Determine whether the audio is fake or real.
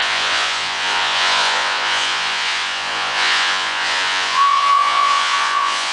fake